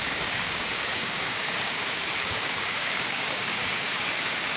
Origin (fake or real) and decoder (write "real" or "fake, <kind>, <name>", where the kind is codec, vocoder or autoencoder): fake, codec, DAC